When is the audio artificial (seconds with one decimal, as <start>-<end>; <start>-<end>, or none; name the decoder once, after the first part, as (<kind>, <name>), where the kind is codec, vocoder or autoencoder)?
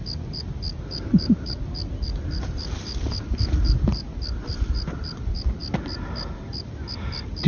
none